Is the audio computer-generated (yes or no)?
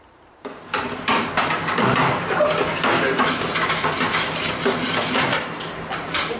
yes